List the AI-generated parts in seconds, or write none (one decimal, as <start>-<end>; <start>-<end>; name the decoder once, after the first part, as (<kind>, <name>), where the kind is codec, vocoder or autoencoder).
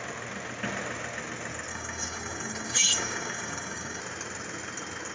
1.7-4.0 (codec, DAC)